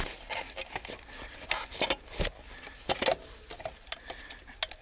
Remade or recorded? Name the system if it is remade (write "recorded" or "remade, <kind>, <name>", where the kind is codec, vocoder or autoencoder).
recorded